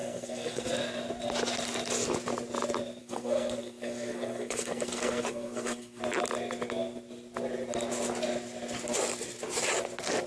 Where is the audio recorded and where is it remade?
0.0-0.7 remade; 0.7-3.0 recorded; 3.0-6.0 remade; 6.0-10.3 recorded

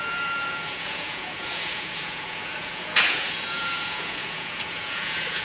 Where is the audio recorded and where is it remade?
0.0-5.4 remade

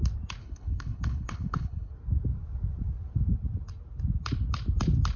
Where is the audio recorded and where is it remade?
0.0-0.4 recorded; 0.4-1.9 remade; 1.9-5.2 recorded

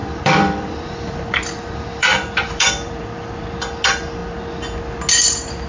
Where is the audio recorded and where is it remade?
0.0-3.4 remade; 3.4-5.7 recorded

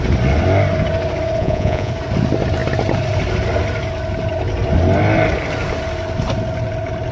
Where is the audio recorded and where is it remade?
0.0-1.4 recorded; 1.4-1.9 remade; 1.9-7.1 recorded

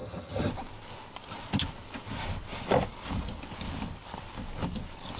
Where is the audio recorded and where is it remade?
0.0-0.5 remade; 0.5-5.2 recorded